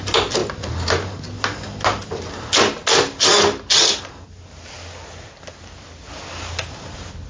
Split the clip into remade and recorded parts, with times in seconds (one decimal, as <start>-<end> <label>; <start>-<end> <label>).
0.0-7.3 recorded